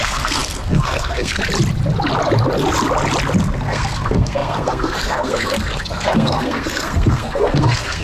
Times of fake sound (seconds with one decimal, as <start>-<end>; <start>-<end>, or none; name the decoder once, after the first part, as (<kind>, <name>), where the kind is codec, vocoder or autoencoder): 0.0-1.4 (codec, SNAC); 3.4-8.0